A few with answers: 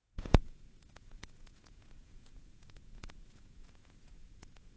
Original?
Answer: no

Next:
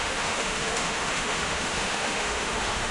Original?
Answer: no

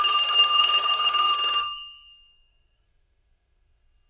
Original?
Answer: no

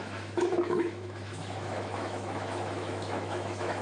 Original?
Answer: no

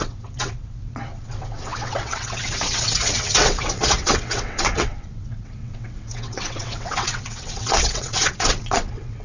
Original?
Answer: no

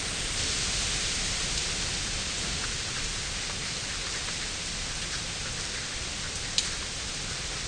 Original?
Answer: no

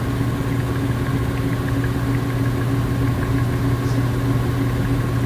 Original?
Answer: yes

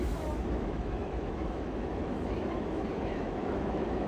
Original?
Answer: no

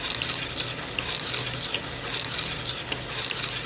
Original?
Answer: yes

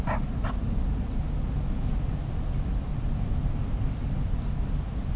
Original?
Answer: yes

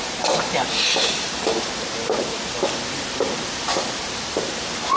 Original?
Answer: no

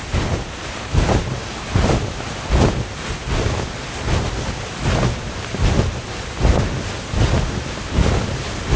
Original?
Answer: yes